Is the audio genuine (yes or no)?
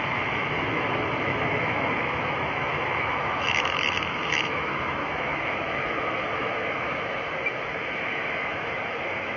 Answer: no